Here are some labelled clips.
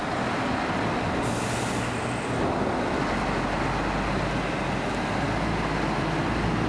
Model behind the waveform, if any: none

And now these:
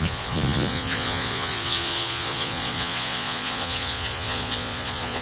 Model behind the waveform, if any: vocoder, Vocos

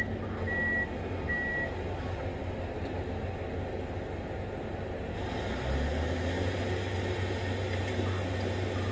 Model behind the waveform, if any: none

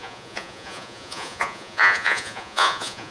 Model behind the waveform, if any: vocoder, Vocos